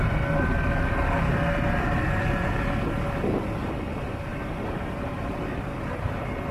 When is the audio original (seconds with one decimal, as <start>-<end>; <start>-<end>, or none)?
0.0-4.3; 5.4-6.5